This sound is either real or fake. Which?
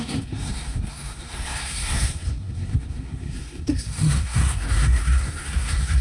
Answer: fake